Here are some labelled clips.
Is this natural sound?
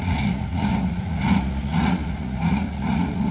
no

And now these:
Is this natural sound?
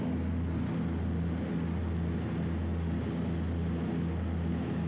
yes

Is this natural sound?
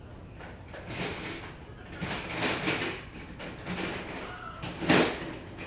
yes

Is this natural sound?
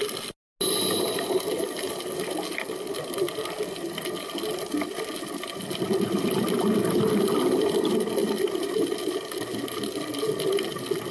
yes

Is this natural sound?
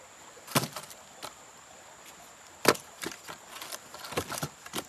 yes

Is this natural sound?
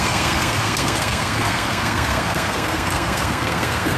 no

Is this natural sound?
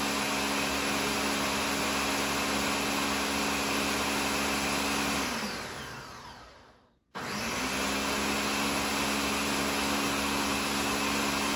yes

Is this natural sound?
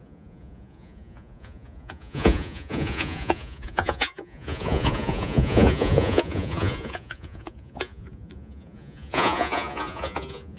no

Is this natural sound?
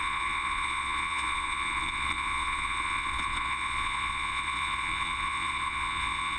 no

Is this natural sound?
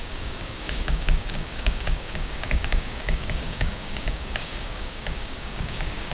no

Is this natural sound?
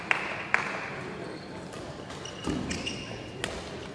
yes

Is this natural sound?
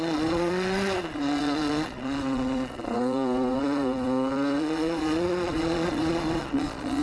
no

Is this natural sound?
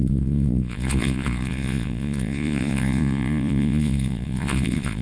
no